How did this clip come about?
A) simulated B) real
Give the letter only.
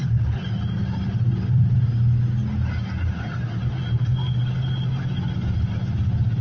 B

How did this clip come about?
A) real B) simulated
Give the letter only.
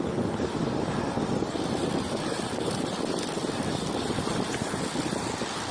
A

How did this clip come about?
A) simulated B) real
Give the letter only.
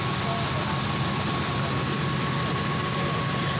B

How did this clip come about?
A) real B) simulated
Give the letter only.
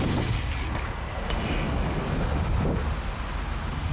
A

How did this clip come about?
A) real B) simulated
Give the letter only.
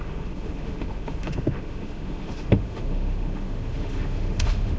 B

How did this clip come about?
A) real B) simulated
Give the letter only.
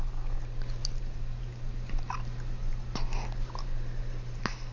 A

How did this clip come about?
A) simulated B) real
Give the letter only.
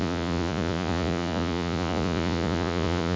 A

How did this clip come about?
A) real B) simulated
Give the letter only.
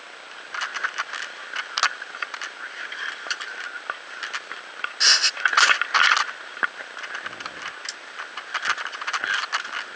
A